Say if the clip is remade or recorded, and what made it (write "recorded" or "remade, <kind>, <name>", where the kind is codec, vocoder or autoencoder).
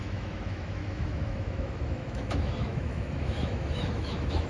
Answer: remade, autoencoder, DAC-VAE